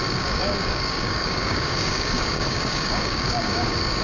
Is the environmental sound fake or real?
fake